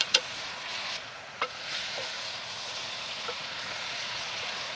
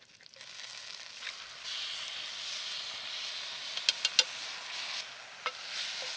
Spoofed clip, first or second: first